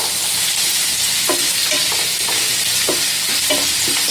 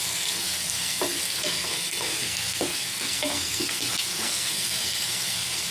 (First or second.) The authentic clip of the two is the first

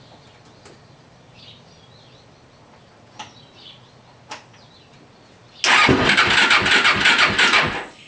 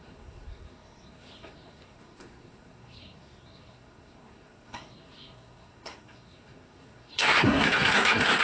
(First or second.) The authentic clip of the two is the first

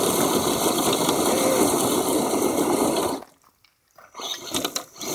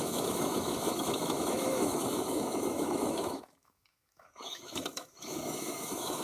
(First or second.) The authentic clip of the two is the first